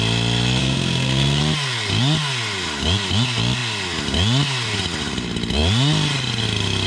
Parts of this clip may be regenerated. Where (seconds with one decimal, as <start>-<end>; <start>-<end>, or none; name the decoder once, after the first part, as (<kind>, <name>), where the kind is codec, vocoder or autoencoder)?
0.6-1.4 (codec, SNAC)